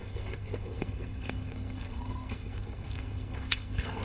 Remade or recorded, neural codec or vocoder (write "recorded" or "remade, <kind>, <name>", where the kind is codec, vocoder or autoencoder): remade, codec, SNAC